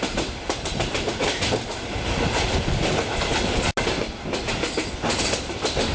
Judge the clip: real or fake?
real